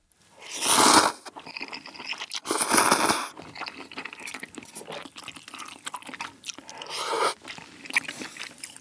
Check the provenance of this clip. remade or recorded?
recorded